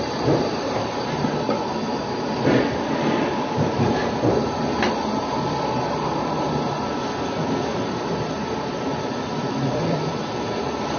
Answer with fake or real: fake